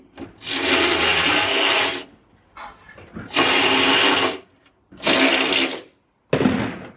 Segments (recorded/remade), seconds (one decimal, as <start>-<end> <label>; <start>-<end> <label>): 0.0-7.0 recorded